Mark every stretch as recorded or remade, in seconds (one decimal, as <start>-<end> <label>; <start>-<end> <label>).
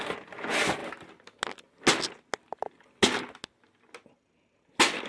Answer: 0.0-5.1 recorded